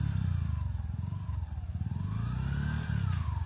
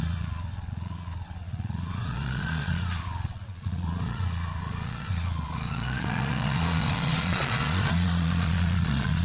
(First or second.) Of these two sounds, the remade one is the second